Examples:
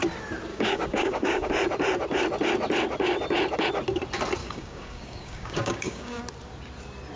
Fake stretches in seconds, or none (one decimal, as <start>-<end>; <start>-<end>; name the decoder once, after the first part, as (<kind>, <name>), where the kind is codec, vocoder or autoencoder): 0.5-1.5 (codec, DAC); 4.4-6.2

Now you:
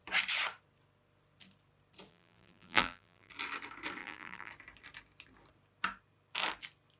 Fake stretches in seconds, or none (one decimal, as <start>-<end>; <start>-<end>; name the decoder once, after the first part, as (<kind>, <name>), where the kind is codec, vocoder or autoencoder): 2.1-3.3 (vocoder, BigVGAN v2); 4.0-4.5

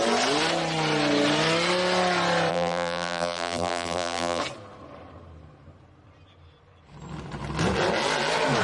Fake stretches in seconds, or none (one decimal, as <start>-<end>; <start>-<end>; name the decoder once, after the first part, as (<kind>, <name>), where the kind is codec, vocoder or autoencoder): 2.5-4.4 (vocoder, BigVGAN v2)

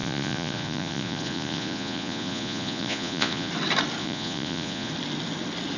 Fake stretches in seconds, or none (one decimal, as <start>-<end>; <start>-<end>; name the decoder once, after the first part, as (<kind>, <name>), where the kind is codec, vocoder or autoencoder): 0.0-3.5 (vocoder, Vocos); 4.0-4.9

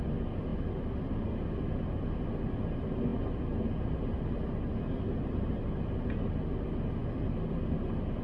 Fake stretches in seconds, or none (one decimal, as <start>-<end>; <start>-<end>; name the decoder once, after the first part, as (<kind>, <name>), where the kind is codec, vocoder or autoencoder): none